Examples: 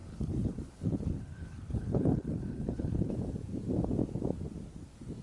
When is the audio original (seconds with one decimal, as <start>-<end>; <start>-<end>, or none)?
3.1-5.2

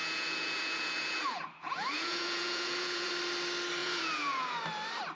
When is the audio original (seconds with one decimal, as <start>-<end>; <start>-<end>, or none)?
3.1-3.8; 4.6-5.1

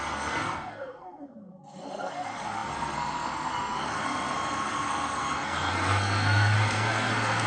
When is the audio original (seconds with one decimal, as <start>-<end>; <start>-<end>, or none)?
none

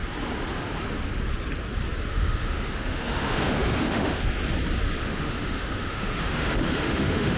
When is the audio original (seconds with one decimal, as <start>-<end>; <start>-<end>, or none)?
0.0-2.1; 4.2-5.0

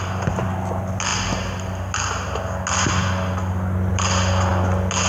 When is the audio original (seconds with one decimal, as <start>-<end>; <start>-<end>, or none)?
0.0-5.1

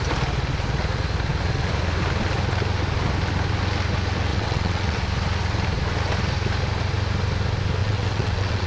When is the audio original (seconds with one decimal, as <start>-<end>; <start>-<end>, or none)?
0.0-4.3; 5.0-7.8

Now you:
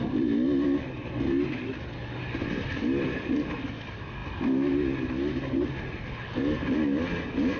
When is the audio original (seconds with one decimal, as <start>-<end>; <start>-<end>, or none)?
0.0-7.6

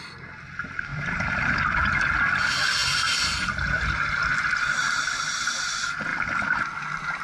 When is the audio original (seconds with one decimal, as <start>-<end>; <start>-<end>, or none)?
0.0-0.9; 1.6-7.2